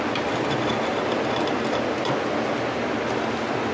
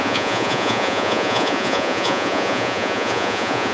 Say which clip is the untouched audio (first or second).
first